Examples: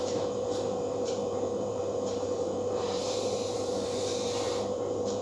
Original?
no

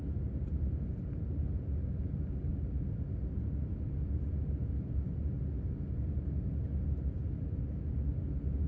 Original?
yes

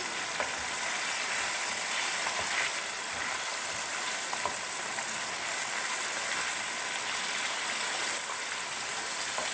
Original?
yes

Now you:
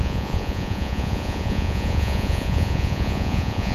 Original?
no